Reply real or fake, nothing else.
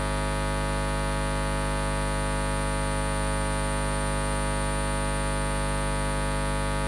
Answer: real